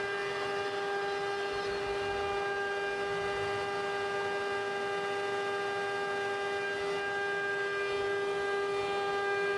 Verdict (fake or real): real